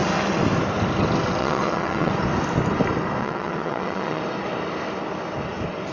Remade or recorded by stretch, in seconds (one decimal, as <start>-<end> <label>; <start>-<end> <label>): 0.0-1.4 recorded; 1.4-2.1 remade; 2.1-3.2 recorded; 3.2-4.2 remade; 4.2-5.9 recorded